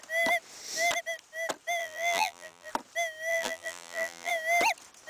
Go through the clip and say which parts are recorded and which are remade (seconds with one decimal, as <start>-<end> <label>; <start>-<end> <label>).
0.0-1.8 recorded; 1.8-2.7 remade; 2.7-3.3 recorded; 3.3-4.3 remade; 4.3-5.1 recorded